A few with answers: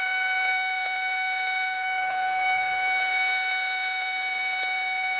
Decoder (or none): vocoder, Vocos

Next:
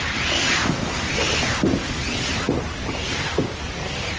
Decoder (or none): none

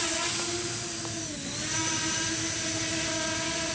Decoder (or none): none